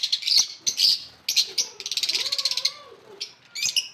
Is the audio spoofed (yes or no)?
no